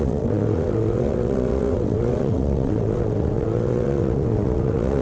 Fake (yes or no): yes